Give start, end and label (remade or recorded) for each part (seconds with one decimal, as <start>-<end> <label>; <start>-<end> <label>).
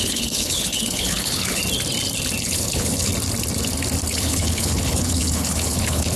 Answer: 0.0-1.6 remade; 1.6-2.4 recorded; 2.4-3.1 remade; 3.1-4.1 recorded; 4.1-6.2 remade